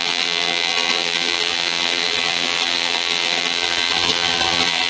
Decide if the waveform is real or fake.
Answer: fake